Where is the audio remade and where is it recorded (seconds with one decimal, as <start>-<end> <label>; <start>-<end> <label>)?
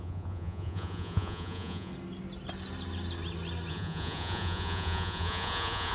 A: 0.0-1.9 remade; 1.9-3.7 recorded; 3.7-5.9 remade